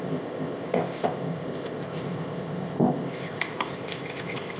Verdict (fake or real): fake